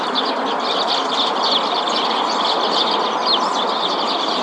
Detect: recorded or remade recorded